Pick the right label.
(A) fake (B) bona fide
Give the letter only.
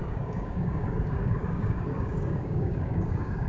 A